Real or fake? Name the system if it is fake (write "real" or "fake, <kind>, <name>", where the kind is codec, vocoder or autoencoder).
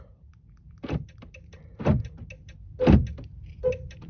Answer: real